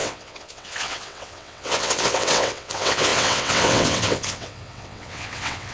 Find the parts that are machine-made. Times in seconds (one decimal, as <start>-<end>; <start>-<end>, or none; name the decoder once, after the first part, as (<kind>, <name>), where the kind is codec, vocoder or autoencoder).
0.0-5.7 (vocoder, WaveNeXt)